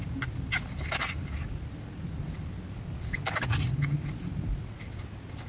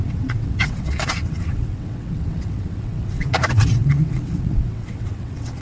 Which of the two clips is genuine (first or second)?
first